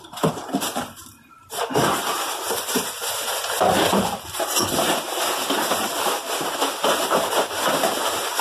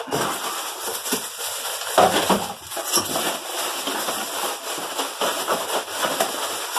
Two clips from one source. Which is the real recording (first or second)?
second